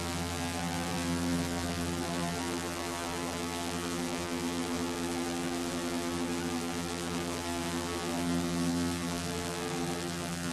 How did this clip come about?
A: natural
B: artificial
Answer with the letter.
B